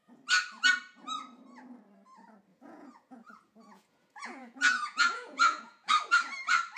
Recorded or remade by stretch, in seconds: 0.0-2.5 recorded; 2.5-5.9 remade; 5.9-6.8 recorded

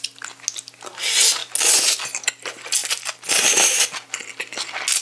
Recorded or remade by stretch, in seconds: 0.0-5.0 recorded

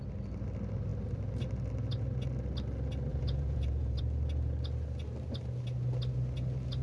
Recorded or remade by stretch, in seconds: 0.0-3.1 recorded; 3.1-4.0 remade; 4.0-6.8 recorded

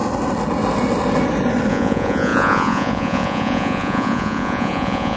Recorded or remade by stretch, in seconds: 0.0-1.7 recorded; 1.7-5.2 remade

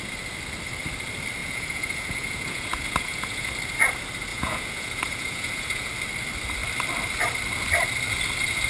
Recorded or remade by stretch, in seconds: 0.0-1.4 recorded; 1.4-3.5 remade; 3.5-4.3 recorded; 4.3-5.9 remade; 5.9-8.7 recorded

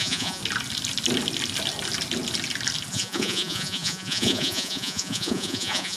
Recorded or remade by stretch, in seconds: 0.0-0.4 remade; 0.4-2.9 recorded; 2.9-6.0 remade

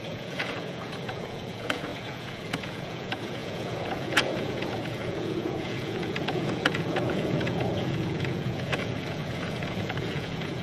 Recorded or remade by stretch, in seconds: 0.0-10.6 remade

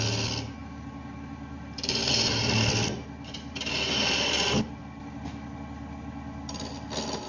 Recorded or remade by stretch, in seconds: 0.0-7.3 recorded